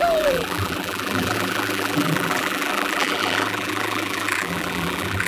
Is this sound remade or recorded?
remade